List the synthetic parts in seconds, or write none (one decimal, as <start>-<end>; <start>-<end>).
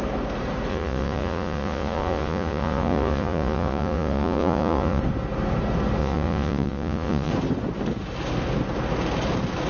0.7-5.0; 6.0-7.3